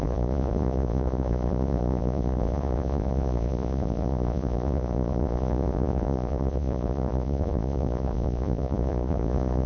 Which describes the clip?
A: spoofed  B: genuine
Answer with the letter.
A